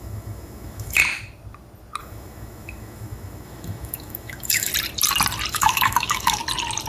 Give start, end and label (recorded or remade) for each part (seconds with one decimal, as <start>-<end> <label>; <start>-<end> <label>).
0.0-1.0 remade; 1.0-2.0 recorded; 2.0-4.7 remade; 4.7-5.5 recorded; 5.5-6.4 remade; 6.4-6.9 recorded